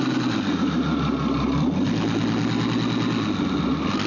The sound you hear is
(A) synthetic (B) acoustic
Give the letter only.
B